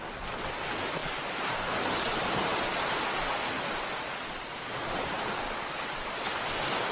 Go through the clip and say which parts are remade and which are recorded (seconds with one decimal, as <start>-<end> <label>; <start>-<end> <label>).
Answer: 0.0-6.9 recorded